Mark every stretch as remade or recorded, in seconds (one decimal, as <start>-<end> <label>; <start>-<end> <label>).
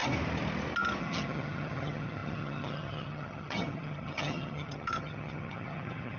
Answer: 0.0-1.0 recorded; 1.0-6.2 remade